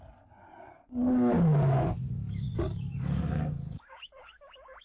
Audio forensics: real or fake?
fake